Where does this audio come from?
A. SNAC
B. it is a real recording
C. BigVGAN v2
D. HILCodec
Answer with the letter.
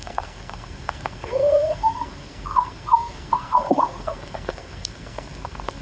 A